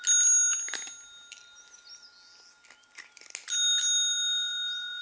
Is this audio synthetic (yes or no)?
no